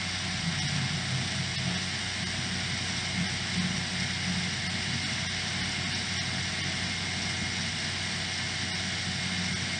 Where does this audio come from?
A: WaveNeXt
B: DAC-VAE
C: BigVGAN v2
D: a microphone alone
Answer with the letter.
D